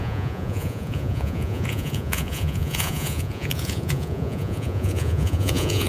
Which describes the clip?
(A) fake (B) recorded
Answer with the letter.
A